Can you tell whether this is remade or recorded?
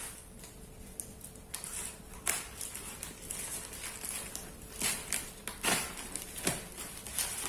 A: recorded